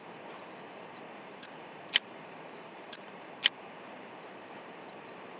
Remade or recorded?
remade